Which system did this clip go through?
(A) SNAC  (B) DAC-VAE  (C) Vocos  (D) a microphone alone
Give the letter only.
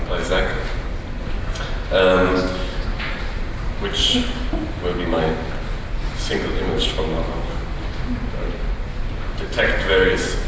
D